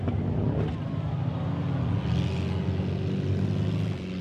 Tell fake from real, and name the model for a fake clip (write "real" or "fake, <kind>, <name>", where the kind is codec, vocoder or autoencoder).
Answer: real